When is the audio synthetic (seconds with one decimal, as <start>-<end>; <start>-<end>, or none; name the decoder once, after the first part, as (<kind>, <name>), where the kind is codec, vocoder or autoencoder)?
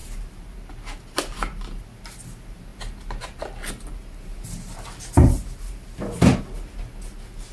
0.0-1.9 (vocoder, BigVGAN v2)